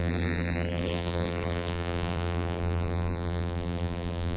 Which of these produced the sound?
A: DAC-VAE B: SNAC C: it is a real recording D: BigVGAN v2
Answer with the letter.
D